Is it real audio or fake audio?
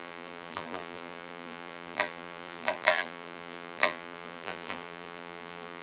fake